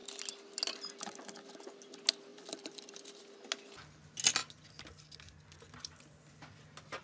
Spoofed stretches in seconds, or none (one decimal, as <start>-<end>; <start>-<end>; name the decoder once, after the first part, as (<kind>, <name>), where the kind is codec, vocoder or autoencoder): 2.3-3.2 (vocoder, BigVGAN v2)